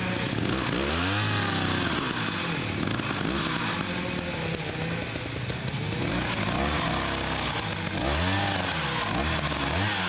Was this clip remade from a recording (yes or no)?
no